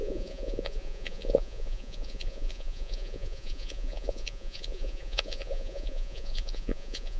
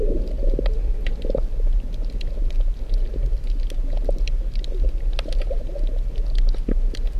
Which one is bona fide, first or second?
second